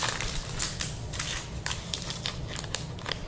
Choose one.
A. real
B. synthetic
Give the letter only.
B